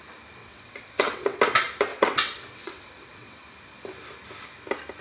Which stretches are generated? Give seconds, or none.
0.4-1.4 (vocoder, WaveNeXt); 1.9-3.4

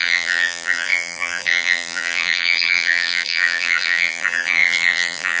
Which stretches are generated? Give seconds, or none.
0.0-5.4 (vocoder, BigVGAN v2)

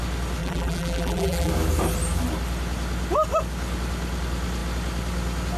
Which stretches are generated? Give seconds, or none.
0.4-1.5 (vocoder, BigVGAN v2)

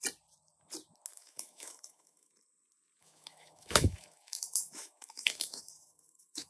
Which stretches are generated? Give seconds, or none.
1.1-2.3 (autoencoder, DAC-VAE); 3.0-6.5